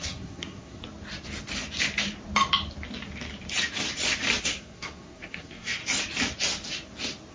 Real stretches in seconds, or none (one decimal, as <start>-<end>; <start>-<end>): 0.8-4.4; 5.8-7.3